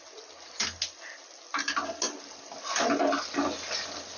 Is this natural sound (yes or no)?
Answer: yes